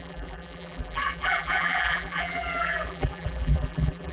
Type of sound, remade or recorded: remade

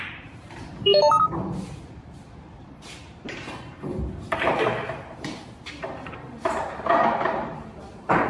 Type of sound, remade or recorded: remade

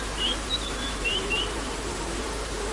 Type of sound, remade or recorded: remade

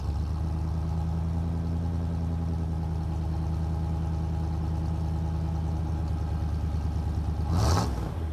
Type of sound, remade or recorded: recorded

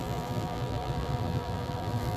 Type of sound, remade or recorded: remade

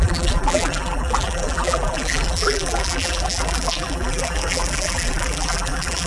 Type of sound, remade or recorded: remade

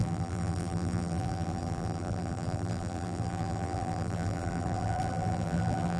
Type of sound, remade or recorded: remade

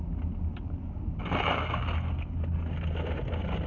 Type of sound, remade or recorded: recorded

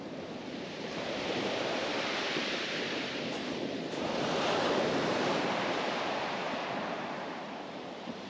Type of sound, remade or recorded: remade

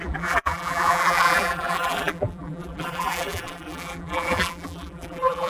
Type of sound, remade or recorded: remade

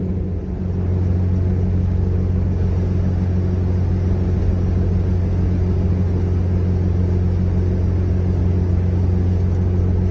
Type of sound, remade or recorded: recorded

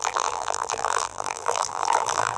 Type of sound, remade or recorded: remade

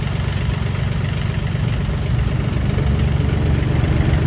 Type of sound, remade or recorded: recorded